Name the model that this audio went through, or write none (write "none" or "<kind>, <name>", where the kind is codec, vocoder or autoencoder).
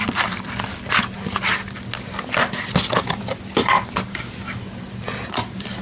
none